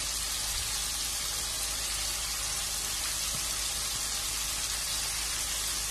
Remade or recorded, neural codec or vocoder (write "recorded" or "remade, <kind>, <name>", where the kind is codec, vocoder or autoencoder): recorded